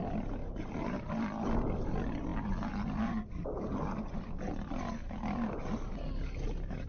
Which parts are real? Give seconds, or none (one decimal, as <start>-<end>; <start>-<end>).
0.0-0.4; 1.1-6.9